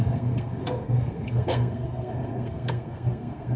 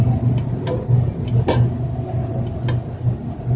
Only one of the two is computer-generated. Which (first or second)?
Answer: first